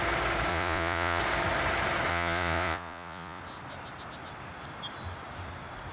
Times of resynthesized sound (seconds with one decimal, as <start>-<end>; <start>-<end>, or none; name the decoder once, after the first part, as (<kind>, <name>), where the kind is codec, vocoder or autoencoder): 0.5-1.2 (vocoder, Vocos); 2.1-3.4